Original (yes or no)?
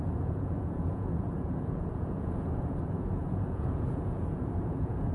no